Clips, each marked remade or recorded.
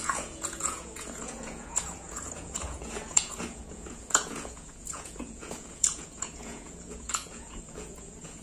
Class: remade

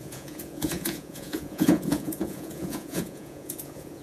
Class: remade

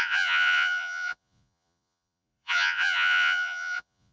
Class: remade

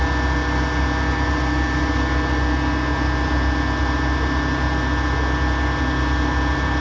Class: recorded